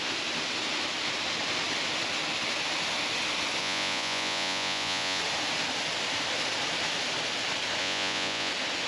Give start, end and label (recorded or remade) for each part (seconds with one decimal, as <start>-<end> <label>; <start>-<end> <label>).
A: 0.0-3.6 recorded; 3.6-5.2 remade; 5.2-7.8 recorded; 7.8-8.5 remade; 8.5-8.9 recorded